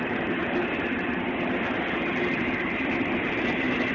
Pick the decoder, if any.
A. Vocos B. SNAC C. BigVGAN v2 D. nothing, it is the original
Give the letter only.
D